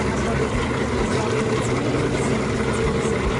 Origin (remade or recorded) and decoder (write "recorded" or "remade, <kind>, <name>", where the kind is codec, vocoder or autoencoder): recorded